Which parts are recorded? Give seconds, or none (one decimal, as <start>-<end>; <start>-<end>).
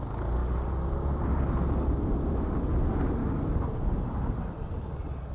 0.0-3.2; 4.0-5.3